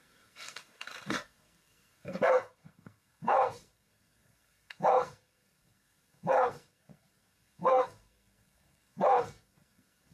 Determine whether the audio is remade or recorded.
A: remade